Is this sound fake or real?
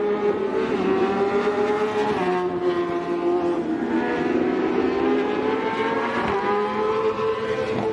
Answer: real